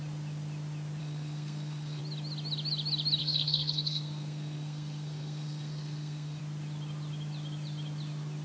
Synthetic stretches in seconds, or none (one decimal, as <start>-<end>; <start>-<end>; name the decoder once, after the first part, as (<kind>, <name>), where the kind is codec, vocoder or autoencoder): 1.0-2.0 (codec, SNAC); 3.2-6.4